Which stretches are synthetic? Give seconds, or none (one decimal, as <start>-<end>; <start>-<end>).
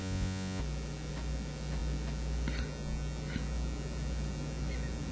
0.0-0.6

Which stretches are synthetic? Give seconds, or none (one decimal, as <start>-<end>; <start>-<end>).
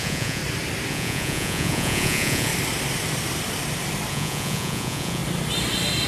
0.0-0.4; 0.9-2.5; 4.1-5.2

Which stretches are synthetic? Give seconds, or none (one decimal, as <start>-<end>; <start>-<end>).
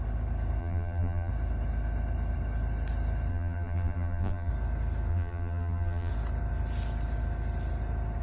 0.6-1.3; 3.3-4.5; 5.1-6.1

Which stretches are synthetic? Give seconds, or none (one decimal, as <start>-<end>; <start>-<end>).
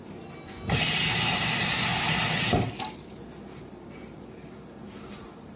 1.9-5.6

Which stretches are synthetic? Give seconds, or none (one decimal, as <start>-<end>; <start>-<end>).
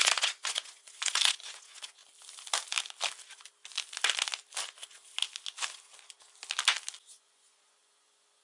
0.0-2.0; 7.0-8.4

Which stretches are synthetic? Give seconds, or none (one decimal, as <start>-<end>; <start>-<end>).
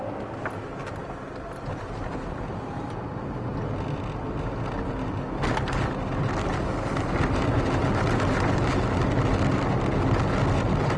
none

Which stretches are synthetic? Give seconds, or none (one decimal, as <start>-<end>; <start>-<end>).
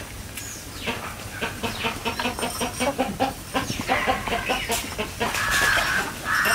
none